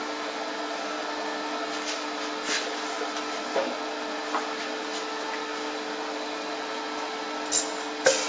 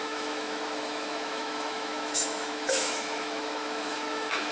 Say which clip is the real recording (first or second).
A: first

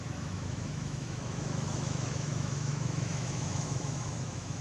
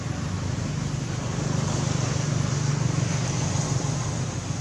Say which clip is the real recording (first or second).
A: second